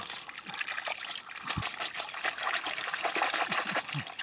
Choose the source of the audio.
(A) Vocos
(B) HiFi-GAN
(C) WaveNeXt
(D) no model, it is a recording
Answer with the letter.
D